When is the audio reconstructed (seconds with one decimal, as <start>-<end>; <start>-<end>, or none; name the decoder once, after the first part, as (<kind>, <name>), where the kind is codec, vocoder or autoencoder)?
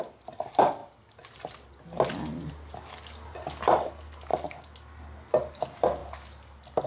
none